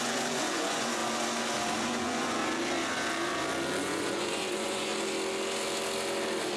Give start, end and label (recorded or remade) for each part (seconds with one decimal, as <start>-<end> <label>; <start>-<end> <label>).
0.0-1.0 remade; 1.0-1.8 recorded; 1.8-2.4 remade; 2.4-3.8 recorded; 3.8-4.9 remade; 4.9-6.6 recorded